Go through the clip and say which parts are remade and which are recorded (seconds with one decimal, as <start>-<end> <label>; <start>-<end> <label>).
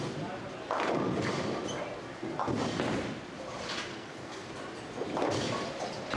0.0-3.9 recorded; 3.9-4.5 remade; 4.5-6.2 recorded